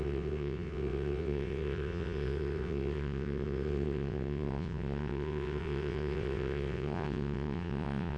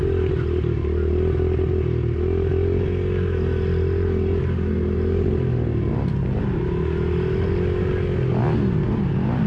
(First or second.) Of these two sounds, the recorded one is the second